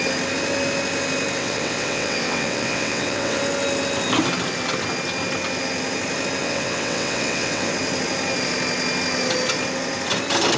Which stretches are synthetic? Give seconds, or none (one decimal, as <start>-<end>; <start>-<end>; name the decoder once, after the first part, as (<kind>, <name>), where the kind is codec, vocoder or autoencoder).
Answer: 1.4-3.4 (vocoder, WaveNeXt); 6.4-7.7